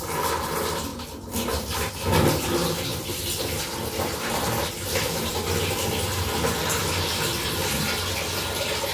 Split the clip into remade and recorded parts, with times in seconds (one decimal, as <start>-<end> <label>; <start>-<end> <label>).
0.0-2.9 recorded; 2.9-3.6 remade; 3.6-8.9 recorded